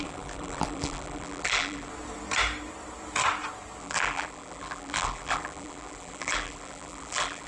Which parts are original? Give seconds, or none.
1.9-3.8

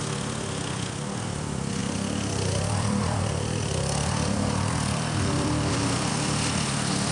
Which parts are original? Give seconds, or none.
0.0-1.8; 6.1-7.1

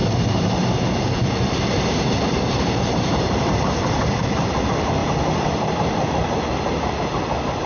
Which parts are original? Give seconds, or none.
4.6-5.0; 7.0-7.7

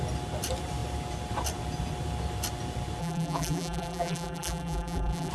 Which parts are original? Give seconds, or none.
0.0-3.0

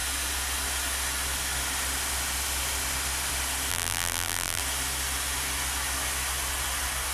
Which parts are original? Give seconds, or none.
0.0-3.7; 4.6-7.1